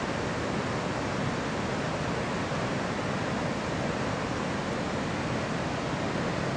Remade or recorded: recorded